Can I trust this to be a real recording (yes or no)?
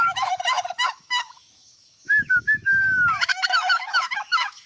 no